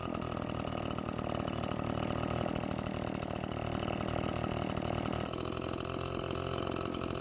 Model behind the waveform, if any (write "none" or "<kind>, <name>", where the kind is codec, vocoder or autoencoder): none